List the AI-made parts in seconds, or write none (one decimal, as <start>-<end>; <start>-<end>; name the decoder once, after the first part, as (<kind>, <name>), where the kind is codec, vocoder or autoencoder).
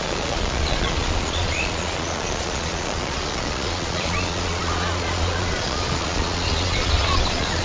0.0-7.6 (vocoder, Vocos)